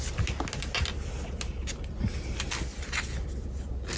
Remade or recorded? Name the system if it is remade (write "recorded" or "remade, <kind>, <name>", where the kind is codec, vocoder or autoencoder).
recorded